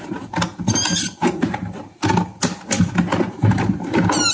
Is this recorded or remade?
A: recorded